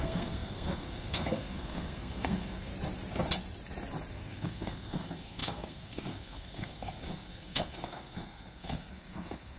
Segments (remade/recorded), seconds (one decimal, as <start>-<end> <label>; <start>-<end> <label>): 0.0-2.7 remade; 2.7-4.1 recorded; 4.1-9.6 remade